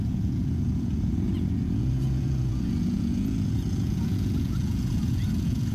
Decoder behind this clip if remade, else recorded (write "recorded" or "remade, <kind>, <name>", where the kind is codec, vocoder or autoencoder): remade, vocoder, Vocos